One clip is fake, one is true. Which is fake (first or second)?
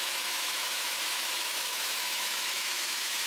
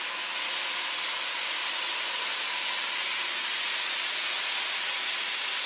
first